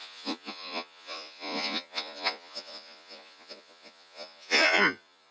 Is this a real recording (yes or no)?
no